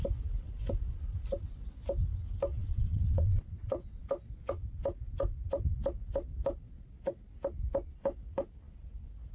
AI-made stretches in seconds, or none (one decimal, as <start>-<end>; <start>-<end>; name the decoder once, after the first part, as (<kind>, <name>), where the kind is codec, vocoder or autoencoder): 2.5-4.0 (vocoder, WaveNeXt)

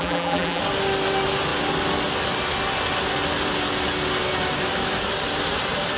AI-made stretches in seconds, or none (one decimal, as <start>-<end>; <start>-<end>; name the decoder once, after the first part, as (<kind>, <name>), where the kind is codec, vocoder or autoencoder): 0.0-0.6 (vocoder, BigVGAN v2)

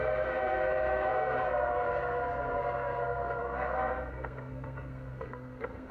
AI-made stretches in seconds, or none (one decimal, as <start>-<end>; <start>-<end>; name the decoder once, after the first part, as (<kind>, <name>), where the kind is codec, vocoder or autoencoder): 0.0-5.9 (codec, SNAC)

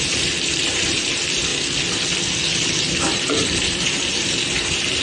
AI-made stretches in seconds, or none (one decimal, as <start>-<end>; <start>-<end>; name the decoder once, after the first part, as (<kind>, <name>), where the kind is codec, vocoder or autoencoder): 0.0-1.5 (vocoder, BigVGAN v2); 2.8-5.0

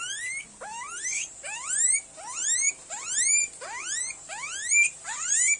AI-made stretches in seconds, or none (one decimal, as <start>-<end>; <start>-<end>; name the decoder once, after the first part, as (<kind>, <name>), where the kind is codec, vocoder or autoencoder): none

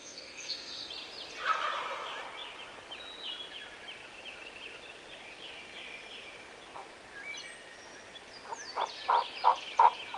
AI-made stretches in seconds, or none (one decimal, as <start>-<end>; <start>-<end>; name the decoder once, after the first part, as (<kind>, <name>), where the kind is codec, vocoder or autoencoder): 0.0-0.9 (codec, SNAC)

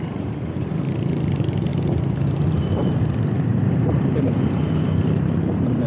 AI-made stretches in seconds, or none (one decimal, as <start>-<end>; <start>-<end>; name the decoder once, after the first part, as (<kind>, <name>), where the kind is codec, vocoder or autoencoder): 0.0-1.7 (vocoder, BigVGAN v2); 2.3-5.9